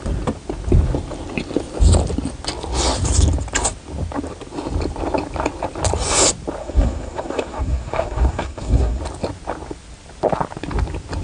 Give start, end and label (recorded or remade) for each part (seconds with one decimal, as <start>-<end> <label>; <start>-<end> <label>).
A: 0.0-6.6 recorded; 6.6-9.0 remade; 9.0-11.2 recorded